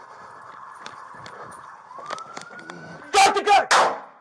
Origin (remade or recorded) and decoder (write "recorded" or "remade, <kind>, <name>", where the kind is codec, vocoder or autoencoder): recorded